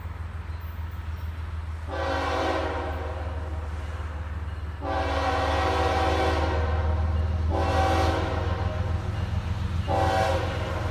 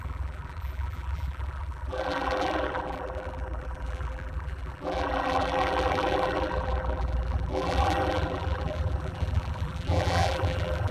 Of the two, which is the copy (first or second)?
second